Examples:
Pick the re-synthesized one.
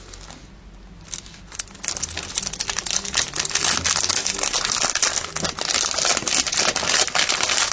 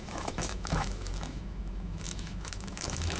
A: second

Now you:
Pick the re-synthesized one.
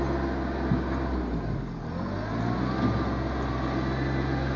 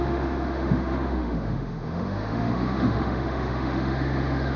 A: second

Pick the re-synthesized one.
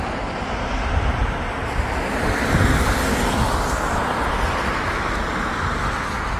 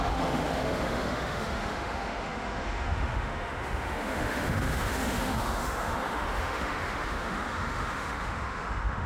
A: second